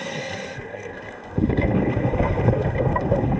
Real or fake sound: fake